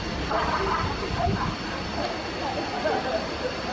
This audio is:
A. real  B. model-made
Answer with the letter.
A